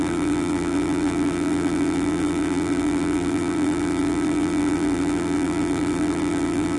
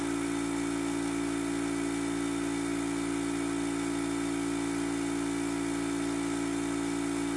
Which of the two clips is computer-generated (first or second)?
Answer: first